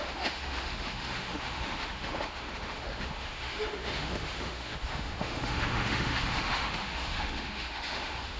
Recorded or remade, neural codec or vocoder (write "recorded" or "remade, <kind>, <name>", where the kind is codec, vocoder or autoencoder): remade, autoencoder, DAC-VAE